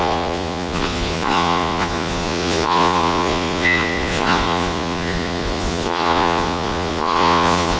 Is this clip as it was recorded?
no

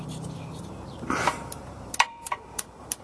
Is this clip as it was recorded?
no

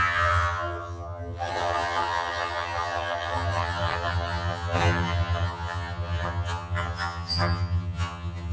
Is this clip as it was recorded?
no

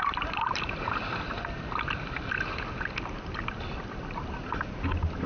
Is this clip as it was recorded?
yes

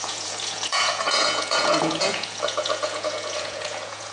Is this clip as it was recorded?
no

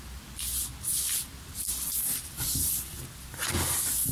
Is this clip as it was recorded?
yes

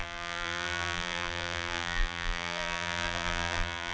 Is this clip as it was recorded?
no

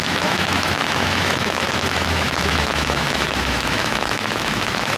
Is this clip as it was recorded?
no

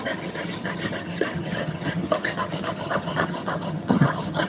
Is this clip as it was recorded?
no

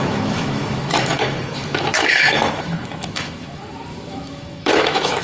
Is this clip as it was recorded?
no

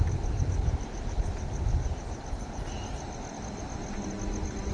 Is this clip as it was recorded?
yes